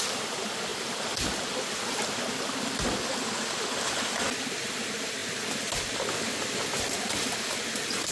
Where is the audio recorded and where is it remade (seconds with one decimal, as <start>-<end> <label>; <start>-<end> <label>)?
0.0-8.1 recorded